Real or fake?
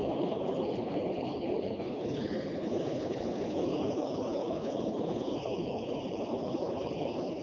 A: fake